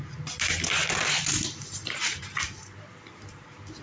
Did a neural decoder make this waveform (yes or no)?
no